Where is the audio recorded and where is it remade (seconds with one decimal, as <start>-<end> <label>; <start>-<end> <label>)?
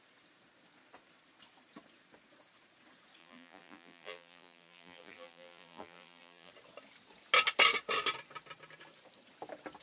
0.0-3.2 recorded; 3.2-6.5 remade; 6.5-9.8 recorded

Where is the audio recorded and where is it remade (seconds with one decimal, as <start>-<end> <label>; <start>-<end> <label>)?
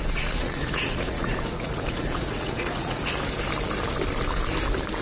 0.0-3.0 remade; 3.0-5.0 recorded